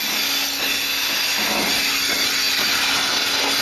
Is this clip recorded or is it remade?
recorded